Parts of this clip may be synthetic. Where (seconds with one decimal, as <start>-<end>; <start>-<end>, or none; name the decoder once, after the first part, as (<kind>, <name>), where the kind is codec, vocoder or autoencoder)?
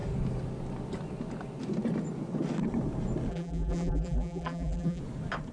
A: 3.3-5.0 (vocoder, BigVGAN v2)